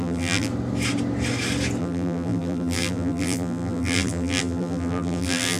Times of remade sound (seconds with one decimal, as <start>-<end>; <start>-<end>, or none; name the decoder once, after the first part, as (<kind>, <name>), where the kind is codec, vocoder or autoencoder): 0.0-0.5 (vocoder, BigVGAN v2); 1.8-5.6